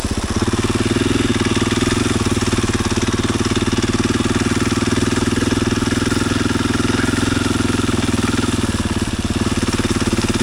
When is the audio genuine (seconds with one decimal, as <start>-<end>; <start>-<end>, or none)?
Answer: 0.0-10.4